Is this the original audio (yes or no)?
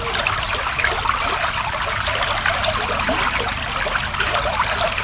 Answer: yes